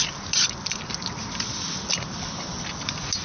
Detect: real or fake real